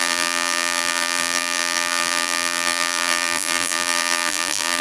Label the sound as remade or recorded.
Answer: remade